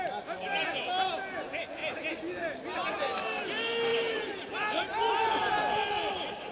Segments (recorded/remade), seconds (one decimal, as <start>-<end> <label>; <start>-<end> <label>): 0.0-6.5 recorded